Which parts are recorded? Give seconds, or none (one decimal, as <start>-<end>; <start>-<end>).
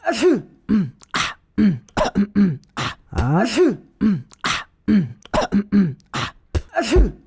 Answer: 0.0-7.3